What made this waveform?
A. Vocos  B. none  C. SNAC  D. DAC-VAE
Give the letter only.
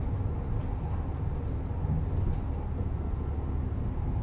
B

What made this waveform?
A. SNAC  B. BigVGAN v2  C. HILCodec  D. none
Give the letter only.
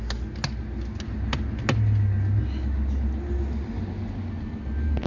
D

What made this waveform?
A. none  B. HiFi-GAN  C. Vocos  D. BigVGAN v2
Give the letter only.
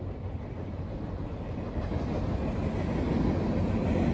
A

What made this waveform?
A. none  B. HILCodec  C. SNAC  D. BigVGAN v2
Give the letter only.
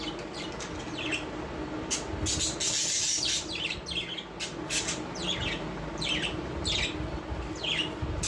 A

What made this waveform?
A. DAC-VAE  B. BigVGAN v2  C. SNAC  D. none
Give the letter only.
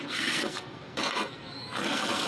C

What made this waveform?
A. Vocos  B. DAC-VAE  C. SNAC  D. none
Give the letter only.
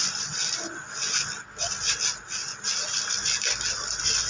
D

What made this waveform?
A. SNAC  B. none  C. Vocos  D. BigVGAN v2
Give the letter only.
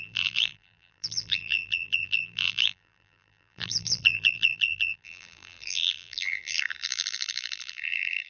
D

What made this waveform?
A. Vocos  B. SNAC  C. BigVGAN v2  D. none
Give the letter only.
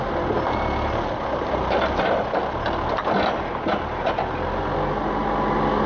D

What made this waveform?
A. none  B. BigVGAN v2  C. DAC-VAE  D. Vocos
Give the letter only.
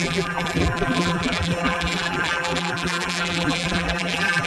B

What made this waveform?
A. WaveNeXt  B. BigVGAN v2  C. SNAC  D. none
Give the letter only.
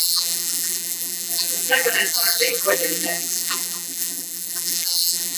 B